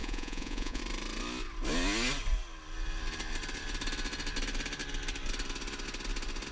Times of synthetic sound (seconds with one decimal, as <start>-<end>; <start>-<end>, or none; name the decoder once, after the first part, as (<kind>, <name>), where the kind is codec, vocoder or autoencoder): 0.0-0.8 (vocoder, Vocos)